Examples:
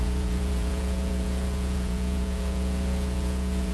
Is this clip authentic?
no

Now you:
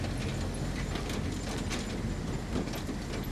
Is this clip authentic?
yes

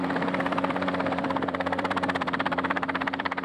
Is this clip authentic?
no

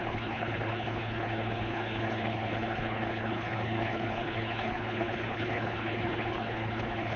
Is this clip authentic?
no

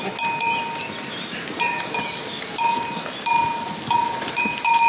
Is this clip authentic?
yes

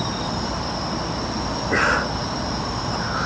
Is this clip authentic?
yes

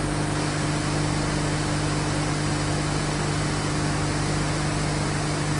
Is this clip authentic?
yes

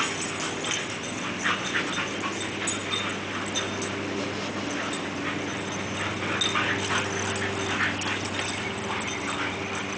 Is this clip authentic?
yes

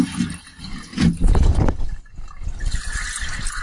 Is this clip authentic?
yes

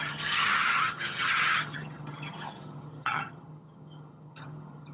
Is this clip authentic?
no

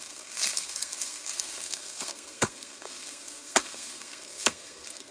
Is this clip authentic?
no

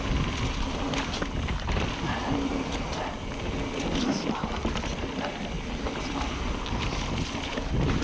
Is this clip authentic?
yes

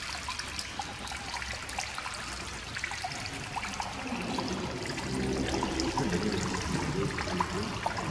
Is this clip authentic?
yes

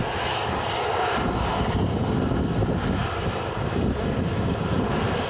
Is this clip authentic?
yes